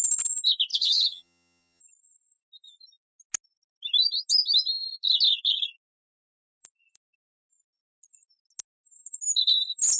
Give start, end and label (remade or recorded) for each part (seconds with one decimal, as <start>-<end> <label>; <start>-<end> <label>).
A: 0.0-0.7 recorded; 0.7-1.8 remade; 1.8-10.0 recorded